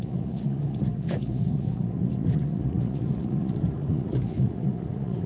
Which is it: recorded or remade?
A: remade